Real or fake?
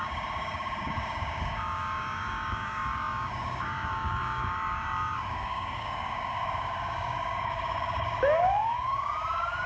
fake